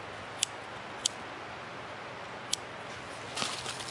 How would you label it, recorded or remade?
recorded